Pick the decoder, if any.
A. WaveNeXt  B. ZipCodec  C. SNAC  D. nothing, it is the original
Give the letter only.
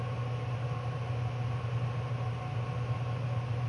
D